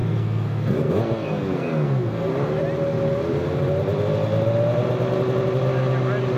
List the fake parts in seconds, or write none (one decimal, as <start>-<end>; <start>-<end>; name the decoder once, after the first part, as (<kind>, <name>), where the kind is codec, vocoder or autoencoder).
0.0-2.3 (codec, SNAC)